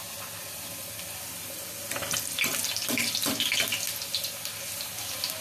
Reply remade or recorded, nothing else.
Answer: recorded